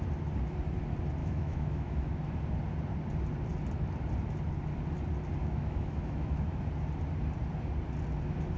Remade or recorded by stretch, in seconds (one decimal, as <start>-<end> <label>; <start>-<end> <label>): 0.0-1.2 recorded; 1.2-2.1 remade; 2.1-5.4 recorded; 5.4-6.6 remade; 6.6-8.6 recorded